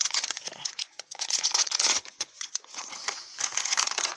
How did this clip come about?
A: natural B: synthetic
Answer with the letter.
B